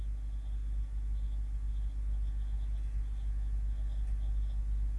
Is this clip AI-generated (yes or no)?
no